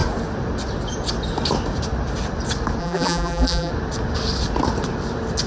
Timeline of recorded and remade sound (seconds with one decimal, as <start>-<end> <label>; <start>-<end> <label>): 0.0-2.8 recorded; 2.8-3.7 remade; 3.7-5.5 recorded

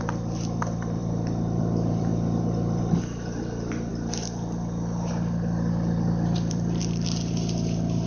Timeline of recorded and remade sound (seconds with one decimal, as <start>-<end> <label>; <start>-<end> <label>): 0.0-1.0 remade; 1.0-1.6 recorded; 1.6-2.1 remade; 2.1-2.8 recorded; 2.8-8.1 remade

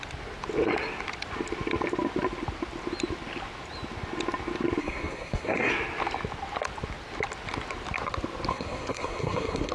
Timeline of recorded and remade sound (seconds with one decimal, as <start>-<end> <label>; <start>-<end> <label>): 0.0-4.8 recorded; 4.8-5.7 remade; 5.7-8.5 recorded; 8.5-9.7 remade

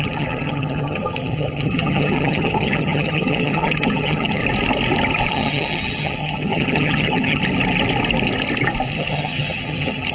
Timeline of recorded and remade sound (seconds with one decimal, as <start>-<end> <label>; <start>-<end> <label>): 0.0-4.4 remade; 4.4-5.3 recorded; 5.3-7.4 remade; 7.4-8.9 recorded; 8.9-10.1 remade

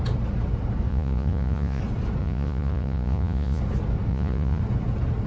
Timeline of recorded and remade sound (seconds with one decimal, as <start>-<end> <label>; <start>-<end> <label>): 0.0-0.9 recorded; 0.9-1.8 remade; 1.8-2.2 recorded; 2.2-3.6 remade; 3.6-4.1 recorded; 4.1-4.6 remade; 4.6-5.3 recorded

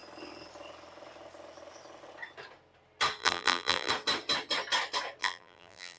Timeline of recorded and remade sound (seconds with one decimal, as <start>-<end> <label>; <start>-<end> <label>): 0.0-3.2 recorded; 3.2-3.9 remade; 3.9-5.2 recorded; 5.2-6.0 remade

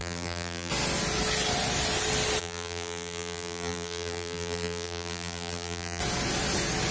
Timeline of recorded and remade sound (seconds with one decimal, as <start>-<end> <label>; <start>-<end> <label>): 0.0-0.7 remade; 0.7-2.4 recorded; 2.4-6.0 remade; 6.0-6.9 recorded

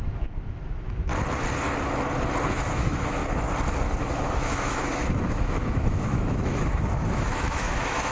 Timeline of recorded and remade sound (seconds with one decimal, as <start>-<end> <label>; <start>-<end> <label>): 0.0-1.1 remade; 1.1-2.4 recorded; 2.4-3.2 remade; 3.2-4.0 recorded; 4.0-8.1 remade